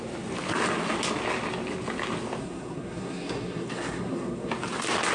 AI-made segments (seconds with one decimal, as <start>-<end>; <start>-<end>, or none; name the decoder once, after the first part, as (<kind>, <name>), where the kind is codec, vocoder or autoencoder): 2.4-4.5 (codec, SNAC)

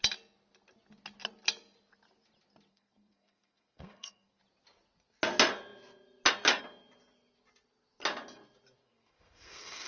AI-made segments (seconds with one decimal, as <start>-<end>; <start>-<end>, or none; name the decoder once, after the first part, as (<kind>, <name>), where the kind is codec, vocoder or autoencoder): 2.7-4.4 (codec, SNAC); 8.8-9.9

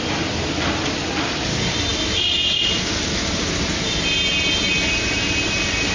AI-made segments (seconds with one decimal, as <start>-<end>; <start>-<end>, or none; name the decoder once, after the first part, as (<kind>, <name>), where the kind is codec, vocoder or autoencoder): none

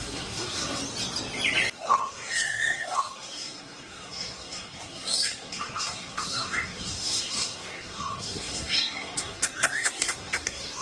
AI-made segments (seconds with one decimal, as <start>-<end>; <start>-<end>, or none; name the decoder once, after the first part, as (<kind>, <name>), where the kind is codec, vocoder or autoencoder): 0.0-0.8 (codec, SNAC); 1.7-10.8